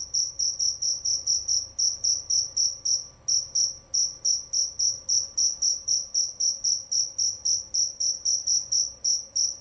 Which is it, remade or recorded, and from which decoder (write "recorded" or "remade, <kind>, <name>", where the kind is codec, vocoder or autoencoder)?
recorded